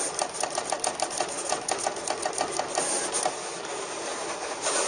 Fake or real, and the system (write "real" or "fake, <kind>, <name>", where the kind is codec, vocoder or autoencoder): real